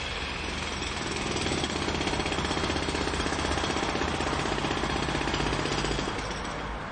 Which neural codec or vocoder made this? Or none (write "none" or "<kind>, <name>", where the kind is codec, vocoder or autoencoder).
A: none